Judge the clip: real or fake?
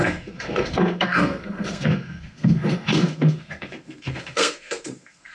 fake